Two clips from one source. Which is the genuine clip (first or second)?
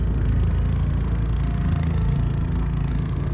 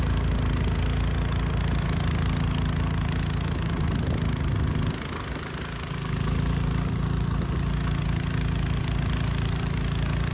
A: second